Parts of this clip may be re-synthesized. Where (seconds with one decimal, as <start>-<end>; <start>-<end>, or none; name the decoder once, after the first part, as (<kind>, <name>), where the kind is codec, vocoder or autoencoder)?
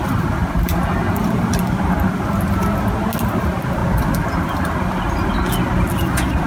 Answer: 0.4-1.0 (vocoder, BigVGAN v2)